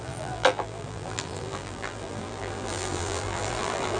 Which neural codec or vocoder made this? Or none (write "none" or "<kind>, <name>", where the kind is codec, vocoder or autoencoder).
vocoder, BigVGAN v2